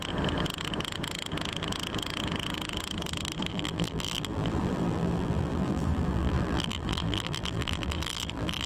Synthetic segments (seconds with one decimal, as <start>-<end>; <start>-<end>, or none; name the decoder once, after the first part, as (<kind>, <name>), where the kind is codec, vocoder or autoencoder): 3.5-8.7 (vocoder, BigVGAN v2)